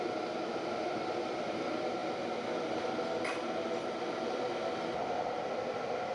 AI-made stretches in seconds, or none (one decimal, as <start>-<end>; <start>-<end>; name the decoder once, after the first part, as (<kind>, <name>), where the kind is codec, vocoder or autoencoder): none